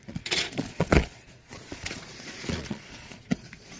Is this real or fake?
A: fake